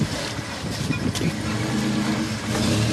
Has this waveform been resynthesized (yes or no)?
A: no